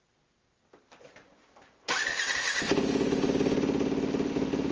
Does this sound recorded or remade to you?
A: recorded